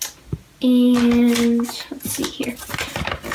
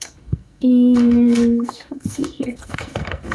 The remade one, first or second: second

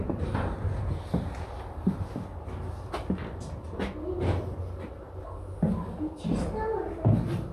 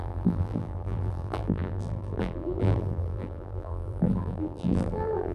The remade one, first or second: second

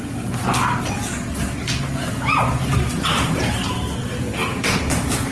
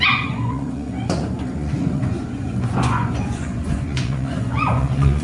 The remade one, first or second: second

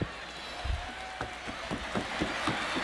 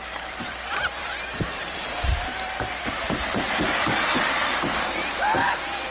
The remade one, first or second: second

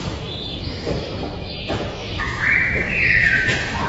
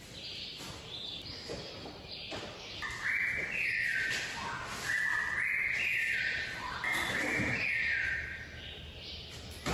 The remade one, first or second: first